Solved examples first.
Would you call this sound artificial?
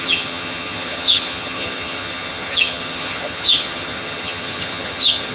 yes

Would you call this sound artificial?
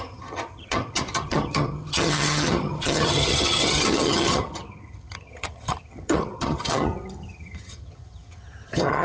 yes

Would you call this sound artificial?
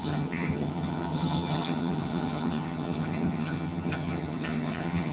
yes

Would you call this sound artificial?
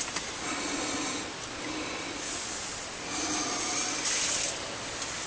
no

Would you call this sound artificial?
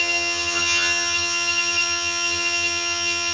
yes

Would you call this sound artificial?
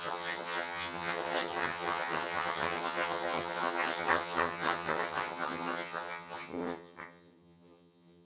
yes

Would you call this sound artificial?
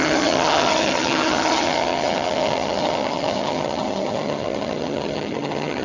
yes